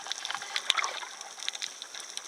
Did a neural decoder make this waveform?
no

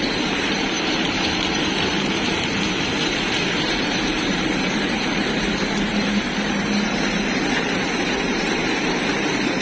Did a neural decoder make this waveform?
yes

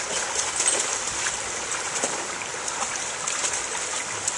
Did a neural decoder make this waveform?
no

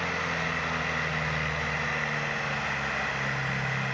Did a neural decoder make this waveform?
no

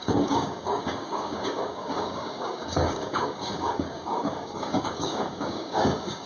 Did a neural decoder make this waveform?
yes